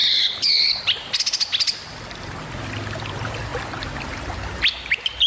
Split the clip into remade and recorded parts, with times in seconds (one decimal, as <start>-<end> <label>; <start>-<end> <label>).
0.0-0.8 remade; 0.8-5.3 recorded